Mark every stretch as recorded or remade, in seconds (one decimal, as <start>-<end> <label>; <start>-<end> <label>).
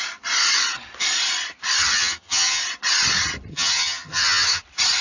0.0-1.8 recorded; 1.8-2.6 remade; 2.6-3.5 recorded; 3.5-4.6 remade; 4.6-5.0 recorded